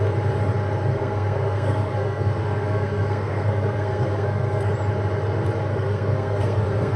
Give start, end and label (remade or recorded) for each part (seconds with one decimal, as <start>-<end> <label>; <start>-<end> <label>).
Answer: 0.0-0.9 recorded; 0.9-4.7 remade; 4.7-5.7 recorded; 5.7-7.0 remade